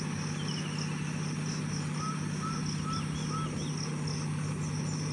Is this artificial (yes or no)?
no